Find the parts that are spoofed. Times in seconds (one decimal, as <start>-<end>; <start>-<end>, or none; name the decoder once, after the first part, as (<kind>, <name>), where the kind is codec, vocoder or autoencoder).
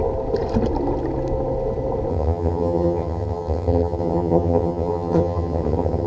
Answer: 2.1-6.1 (vocoder, HiFi-GAN)